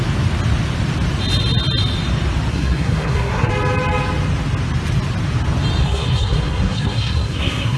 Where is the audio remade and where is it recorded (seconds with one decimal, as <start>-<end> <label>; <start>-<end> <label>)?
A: 0.0-2.5 recorded; 2.5-3.5 remade; 3.5-5.8 recorded; 5.8-7.8 remade